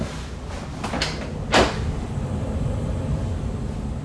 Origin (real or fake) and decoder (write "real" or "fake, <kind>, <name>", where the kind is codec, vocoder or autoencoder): real